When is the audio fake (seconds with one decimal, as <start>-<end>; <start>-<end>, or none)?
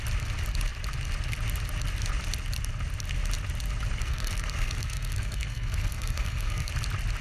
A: 4.0-6.7